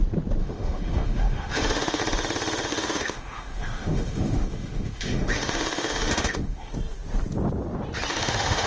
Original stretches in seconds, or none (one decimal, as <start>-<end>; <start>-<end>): 0.0-0.4; 2.0-2.7; 6.7-8.1